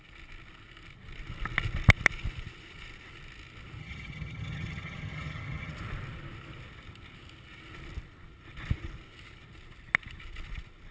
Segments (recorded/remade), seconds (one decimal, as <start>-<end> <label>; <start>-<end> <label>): 0.0-3.8 recorded; 3.8-5.7 remade; 5.7-10.9 recorded